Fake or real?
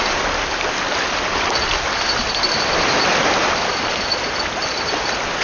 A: real